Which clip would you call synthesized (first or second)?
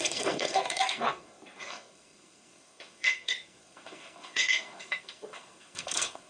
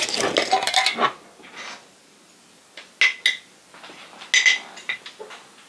first